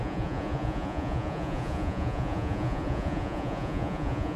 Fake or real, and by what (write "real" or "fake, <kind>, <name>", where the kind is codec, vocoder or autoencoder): fake, vocoder, Vocos